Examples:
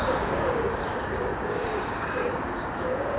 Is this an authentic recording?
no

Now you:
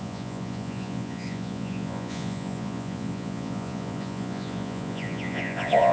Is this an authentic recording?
no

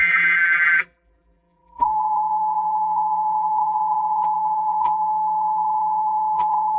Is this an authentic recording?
no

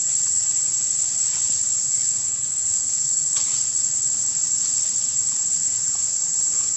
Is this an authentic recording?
no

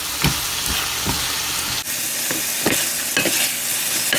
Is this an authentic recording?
yes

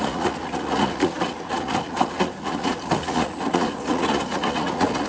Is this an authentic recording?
no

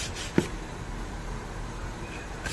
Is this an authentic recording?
yes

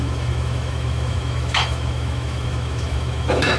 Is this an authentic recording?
no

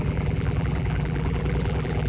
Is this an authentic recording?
no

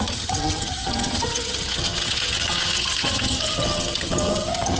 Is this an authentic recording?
no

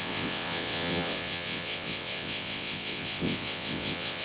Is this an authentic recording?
no